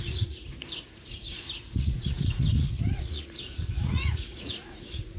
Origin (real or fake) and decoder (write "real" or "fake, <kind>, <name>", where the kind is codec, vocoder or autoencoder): fake, vocoder, Vocos